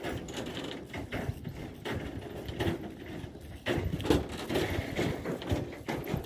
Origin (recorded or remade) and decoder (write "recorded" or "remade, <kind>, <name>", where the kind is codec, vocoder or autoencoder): recorded